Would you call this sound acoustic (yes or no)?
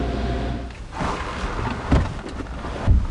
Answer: yes